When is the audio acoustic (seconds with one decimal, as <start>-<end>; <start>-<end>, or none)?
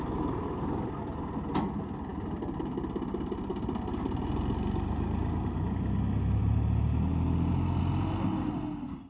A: 0.0-9.1